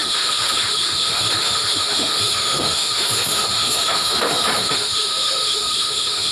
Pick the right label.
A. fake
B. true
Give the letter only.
A